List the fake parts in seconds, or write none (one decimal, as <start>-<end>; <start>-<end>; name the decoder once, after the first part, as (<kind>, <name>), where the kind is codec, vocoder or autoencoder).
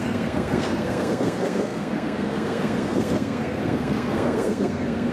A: 0.0-5.1 (codec, SNAC)